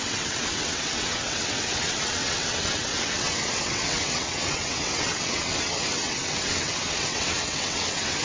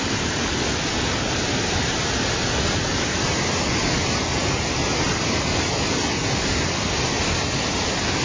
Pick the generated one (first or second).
first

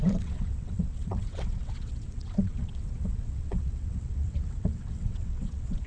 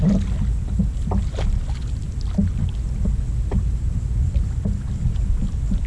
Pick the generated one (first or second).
first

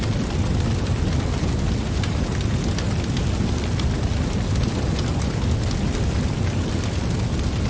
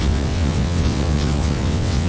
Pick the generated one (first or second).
second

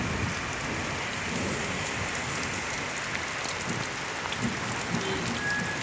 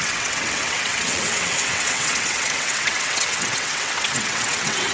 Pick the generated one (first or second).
second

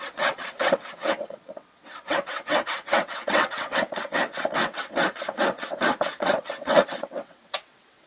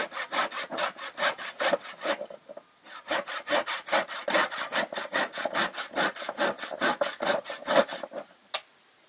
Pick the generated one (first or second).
first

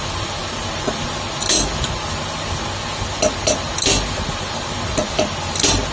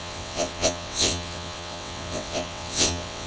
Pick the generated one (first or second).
second